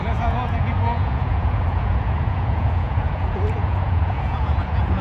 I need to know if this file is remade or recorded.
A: remade